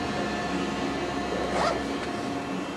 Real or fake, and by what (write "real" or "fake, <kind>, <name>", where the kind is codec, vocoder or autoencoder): real